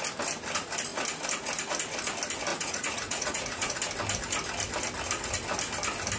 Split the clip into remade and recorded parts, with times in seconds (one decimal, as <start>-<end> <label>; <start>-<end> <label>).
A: 0.0-2.5 recorded; 2.5-3.8 remade; 3.8-6.2 recorded